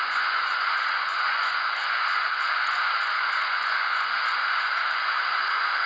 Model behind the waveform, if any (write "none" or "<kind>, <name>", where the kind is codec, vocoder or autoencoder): vocoder, Vocos